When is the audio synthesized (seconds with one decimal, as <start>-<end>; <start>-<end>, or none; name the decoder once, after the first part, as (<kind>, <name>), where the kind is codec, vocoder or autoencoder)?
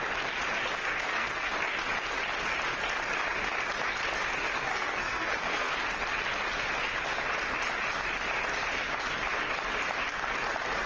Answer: 0.8-1.5 (codec, SNAC); 4.7-5.7